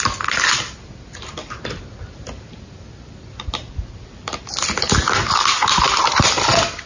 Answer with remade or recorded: recorded